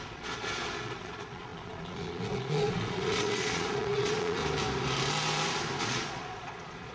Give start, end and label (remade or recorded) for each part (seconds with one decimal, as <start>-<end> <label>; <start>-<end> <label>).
0.0-4.4 remade; 4.4-5.8 recorded; 5.8-6.9 remade